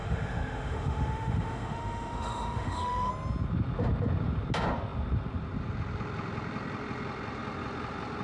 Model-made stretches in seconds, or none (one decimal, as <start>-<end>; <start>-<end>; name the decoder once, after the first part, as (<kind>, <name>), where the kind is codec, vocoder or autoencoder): 0.0-3.1 (autoencoder, DAC-VAE)